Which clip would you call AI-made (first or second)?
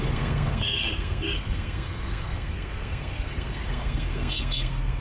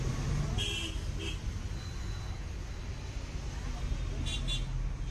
first